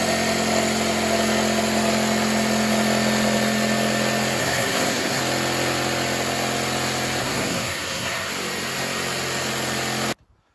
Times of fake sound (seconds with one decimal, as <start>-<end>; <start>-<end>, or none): 4.4-5.2; 7.2-8.3